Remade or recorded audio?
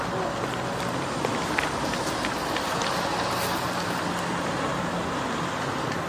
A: recorded